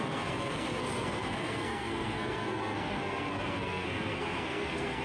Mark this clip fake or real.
fake